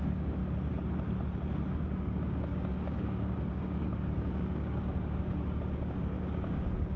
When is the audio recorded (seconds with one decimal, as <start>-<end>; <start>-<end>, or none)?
0.4-1.7